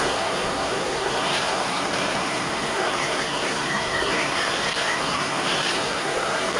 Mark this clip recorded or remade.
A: remade